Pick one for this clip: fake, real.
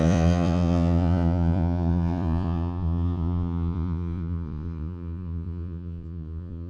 fake